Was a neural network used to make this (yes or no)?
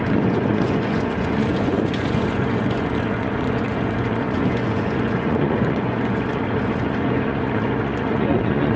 yes